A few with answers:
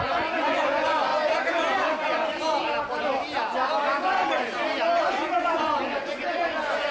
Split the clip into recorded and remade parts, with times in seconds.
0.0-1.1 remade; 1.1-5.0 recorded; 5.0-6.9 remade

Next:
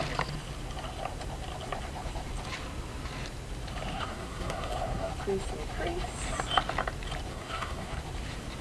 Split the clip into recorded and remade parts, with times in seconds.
0.0-3.9 recorded; 3.9-5.1 remade; 5.1-7.3 recorded; 7.3-8.0 remade; 8.0-8.6 recorded